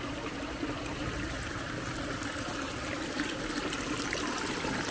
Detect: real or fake real